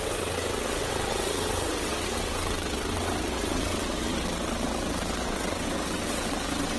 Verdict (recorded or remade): remade